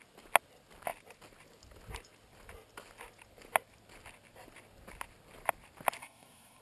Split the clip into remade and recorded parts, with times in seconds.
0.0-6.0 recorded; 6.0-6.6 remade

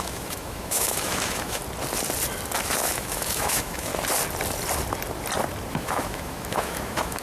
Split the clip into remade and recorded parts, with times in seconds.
0.0-1.6 remade; 1.6-2.6 recorded; 2.6-3.9 remade; 3.9-5.7 recorded; 5.7-7.2 remade

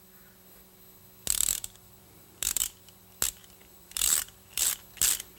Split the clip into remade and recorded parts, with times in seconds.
0.0-1.5 recorded; 1.5-3.0 remade; 3.0-3.4 recorded; 3.4-4.7 remade; 4.7-5.4 recorded

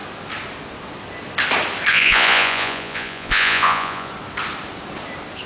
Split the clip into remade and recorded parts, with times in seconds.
0.0-1.9 recorded; 1.9-4.1 remade; 4.1-5.5 recorded